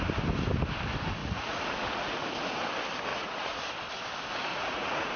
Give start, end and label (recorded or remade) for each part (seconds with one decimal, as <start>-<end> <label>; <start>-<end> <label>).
0.0-1.2 recorded; 1.2-2.3 remade; 2.3-3.1 recorded; 3.1-3.6 remade; 3.6-4.5 recorded; 4.5-5.2 remade